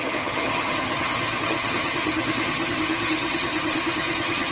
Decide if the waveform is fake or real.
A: fake